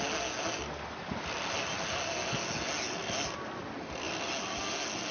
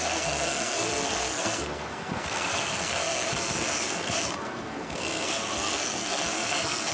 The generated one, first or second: second